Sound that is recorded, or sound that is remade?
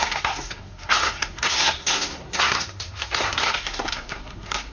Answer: remade